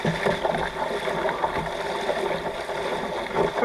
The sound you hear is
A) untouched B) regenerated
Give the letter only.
A